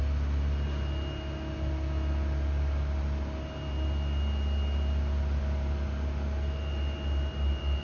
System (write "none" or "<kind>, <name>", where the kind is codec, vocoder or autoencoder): none